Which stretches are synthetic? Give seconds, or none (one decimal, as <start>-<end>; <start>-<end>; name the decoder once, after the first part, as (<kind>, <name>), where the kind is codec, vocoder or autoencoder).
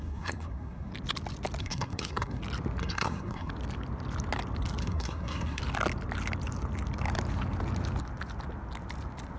0.0-0.9 (codec, SNAC); 1.6-2.4; 2.8-3.5; 4.8-5.6